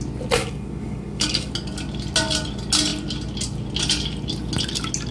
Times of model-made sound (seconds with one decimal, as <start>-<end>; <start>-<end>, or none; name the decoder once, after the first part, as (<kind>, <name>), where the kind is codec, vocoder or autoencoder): 0.4-1.5 (codec, DAC)